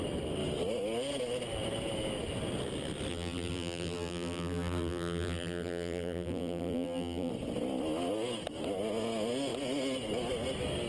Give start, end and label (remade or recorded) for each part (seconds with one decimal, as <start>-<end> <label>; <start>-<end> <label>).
0.0-3.1 recorded; 3.1-7.3 remade; 7.3-10.9 recorded